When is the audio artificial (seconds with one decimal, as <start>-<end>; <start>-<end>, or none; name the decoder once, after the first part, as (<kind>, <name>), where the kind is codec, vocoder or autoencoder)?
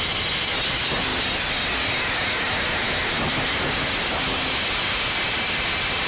none